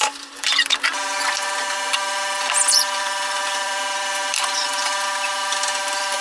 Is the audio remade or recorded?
remade